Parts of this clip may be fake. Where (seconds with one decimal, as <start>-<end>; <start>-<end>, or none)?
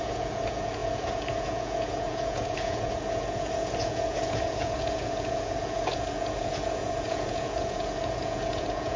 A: 0.0-9.0